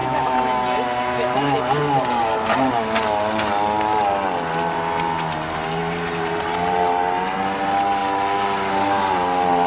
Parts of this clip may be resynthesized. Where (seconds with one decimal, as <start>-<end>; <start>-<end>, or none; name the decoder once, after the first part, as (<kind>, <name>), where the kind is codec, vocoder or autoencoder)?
0.0-1.6 (autoencoder, DAC-VAE)